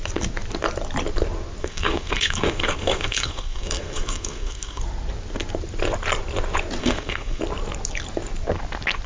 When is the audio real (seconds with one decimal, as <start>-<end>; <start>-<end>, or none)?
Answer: 0.0-1.6; 4.8-6.8; 7.4-9.1